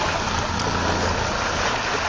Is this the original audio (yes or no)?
yes